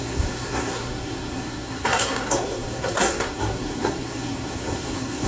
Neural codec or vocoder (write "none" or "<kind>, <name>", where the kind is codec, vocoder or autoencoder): codec, SNAC